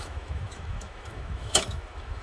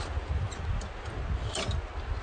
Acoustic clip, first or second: second